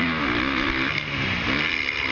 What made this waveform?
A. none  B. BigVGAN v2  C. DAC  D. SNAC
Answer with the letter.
A